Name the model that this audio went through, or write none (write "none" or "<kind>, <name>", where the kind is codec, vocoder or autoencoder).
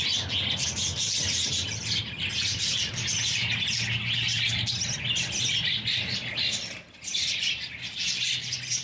none